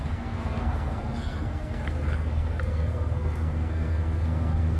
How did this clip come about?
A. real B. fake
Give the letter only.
B